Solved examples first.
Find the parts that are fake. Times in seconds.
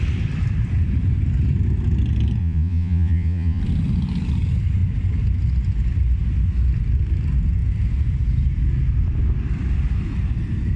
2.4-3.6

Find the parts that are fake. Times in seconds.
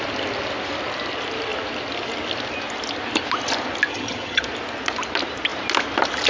3.9-4.4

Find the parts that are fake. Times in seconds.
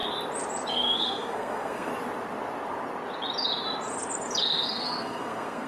0.7-1.9; 4.4-5.7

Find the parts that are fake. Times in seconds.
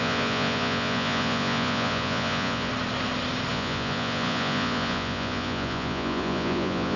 0.0-2.7; 3.5-7.0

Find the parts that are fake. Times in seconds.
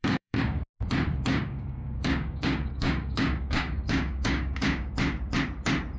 0.0-0.6; 1.3-4.9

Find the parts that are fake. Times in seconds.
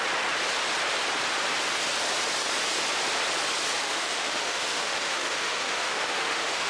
3.8-6.7